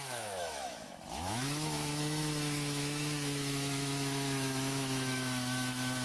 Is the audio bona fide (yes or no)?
no